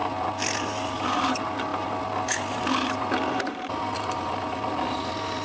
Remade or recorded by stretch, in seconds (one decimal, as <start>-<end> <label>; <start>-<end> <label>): 0.0-5.4 recorded